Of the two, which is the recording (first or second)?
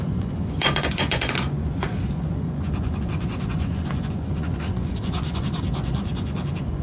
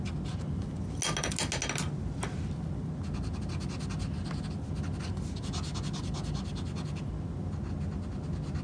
second